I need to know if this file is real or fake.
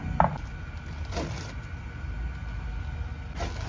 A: real